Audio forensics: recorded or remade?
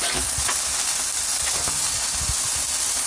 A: recorded